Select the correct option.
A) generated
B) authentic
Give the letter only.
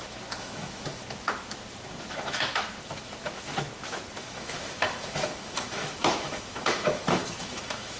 A